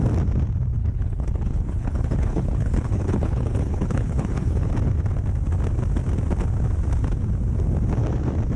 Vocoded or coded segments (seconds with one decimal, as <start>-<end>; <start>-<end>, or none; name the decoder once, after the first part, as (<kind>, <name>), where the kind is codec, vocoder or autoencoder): 0.8-4.7 (codec, HILCodec)